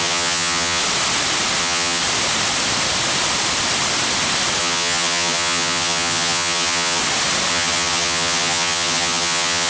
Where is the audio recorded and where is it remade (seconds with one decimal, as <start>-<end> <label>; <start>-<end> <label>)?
0.0-0.8 remade; 0.8-1.6 recorded; 1.6-2.0 remade; 2.0-4.6 recorded; 4.6-7.0 remade; 7.0-7.5 recorded; 7.5-9.7 remade